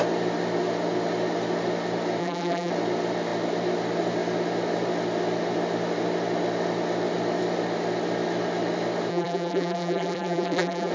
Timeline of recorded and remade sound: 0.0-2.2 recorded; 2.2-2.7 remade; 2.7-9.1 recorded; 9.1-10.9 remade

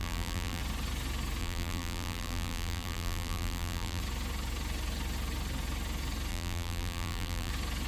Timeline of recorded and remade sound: 0.0-0.6 remade; 0.6-1.4 recorded; 1.4-4.0 remade; 4.0-6.3 recorded; 6.3-7.5 remade; 7.5-7.9 recorded

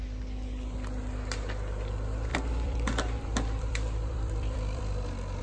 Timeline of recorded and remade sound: 0.0-2.3 recorded; 2.3-5.4 remade

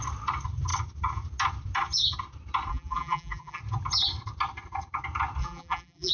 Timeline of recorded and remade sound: 0.0-2.7 recorded; 2.7-3.6 remade; 3.6-5.4 recorded; 5.4-6.1 remade

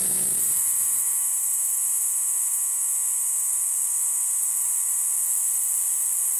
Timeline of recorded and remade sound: 0.0-3.5 recorded; 3.5-3.9 remade; 3.9-4.4 recorded; 4.4-6.4 remade

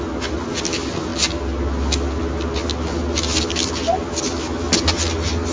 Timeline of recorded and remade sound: 0.0-5.5 recorded

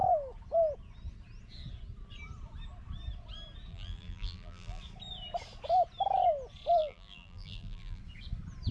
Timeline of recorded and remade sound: 0.0-3.7 recorded; 3.7-4.8 remade; 4.8-6.8 recorded; 6.8-8.0 remade; 8.0-8.7 recorded

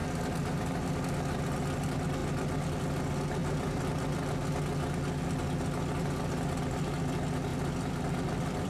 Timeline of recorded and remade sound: 0.0-3.4 recorded; 3.4-4.3 remade; 4.3-7.5 recorded; 7.5-8.7 remade